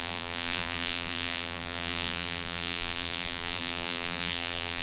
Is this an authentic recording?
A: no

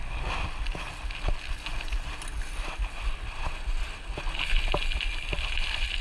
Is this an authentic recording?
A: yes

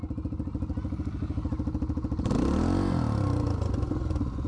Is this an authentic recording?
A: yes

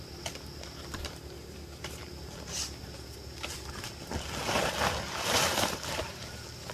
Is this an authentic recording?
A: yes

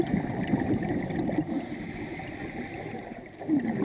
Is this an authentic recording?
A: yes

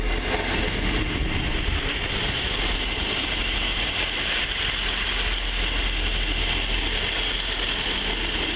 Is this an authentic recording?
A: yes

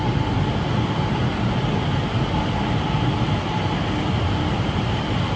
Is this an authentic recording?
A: yes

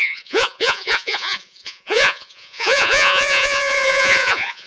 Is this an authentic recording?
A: no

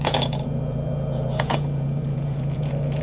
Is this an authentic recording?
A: no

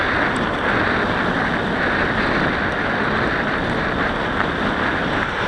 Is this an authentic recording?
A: yes